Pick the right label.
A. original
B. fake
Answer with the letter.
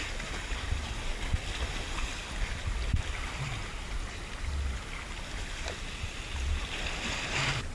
A